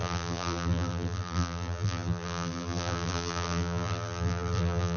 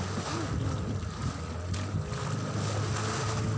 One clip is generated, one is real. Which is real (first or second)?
second